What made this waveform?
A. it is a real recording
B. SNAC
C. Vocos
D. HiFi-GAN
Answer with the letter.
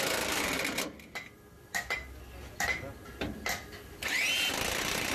A